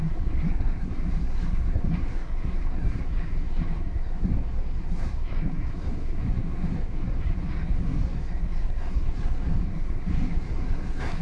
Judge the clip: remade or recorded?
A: remade